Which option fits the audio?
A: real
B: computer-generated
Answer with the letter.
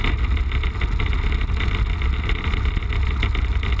A